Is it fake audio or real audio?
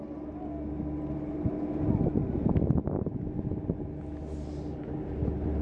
real